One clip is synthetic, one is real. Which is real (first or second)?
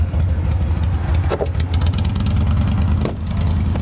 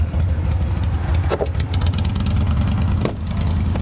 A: first